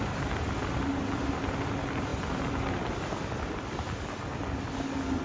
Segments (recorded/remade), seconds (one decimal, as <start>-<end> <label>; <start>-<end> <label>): 0.0-5.2 recorded